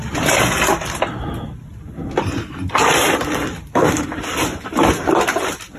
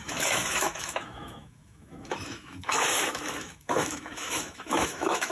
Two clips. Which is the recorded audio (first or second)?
first